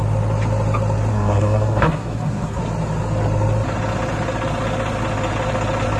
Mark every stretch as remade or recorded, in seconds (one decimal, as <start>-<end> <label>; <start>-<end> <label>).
0.0-1.1 recorded; 1.1-2.6 remade; 2.6-6.0 recorded